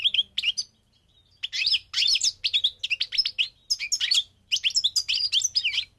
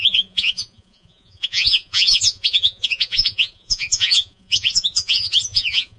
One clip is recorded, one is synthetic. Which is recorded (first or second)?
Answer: first